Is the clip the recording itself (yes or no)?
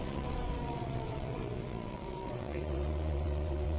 no